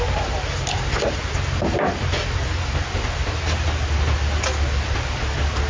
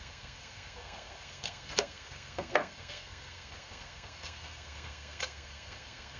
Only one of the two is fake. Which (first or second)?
second